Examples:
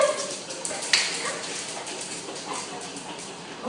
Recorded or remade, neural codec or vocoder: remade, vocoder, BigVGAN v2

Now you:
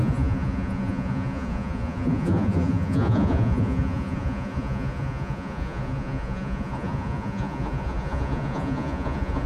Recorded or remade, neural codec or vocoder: remade, vocoder, Vocos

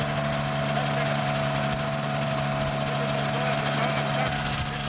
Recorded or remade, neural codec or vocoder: recorded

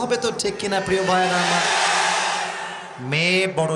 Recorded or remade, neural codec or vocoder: recorded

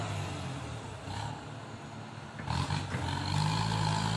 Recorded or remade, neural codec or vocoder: recorded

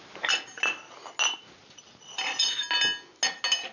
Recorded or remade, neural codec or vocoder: recorded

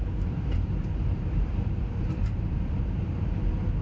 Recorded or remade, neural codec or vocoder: remade, vocoder, BigVGAN v2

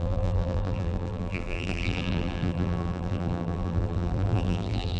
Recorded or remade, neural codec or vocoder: remade, vocoder, BigVGAN v2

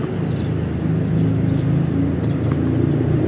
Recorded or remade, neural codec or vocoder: recorded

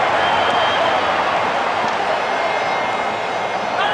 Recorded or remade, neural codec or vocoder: recorded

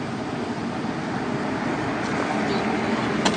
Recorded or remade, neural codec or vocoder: recorded